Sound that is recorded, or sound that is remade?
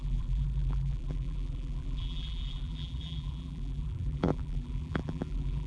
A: remade